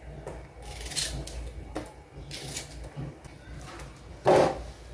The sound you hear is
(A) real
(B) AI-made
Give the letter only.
A